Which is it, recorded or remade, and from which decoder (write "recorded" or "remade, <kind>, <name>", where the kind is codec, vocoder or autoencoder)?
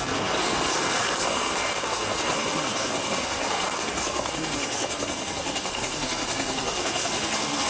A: remade, codec, SNAC